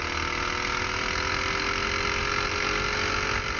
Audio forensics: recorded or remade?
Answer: recorded